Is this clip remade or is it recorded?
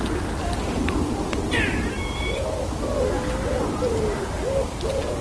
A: recorded